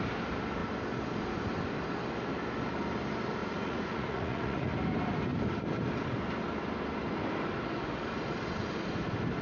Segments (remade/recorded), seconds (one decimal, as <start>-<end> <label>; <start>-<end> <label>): 0.0-3.4 recorded; 3.4-4.7 remade; 4.7-9.4 recorded